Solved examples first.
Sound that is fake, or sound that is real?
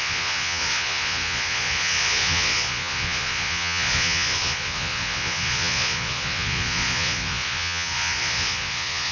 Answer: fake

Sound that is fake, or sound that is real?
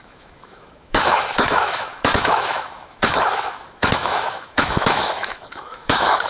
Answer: fake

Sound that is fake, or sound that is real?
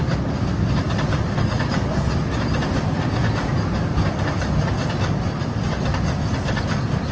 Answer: real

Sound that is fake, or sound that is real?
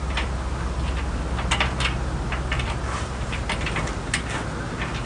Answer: real